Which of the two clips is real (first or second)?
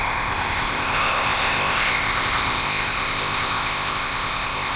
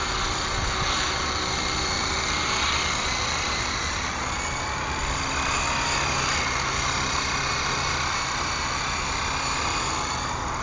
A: second